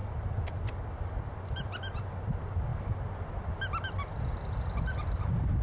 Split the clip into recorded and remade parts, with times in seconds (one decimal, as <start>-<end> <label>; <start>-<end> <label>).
0.0-5.6 recorded